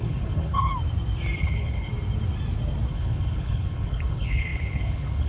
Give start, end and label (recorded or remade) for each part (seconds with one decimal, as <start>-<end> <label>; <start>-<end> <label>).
0.0-0.7 remade; 0.7-1.4 recorded; 1.4-1.9 remade; 1.9-2.9 recorded; 2.9-5.3 remade